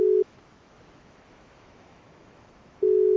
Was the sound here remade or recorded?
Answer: remade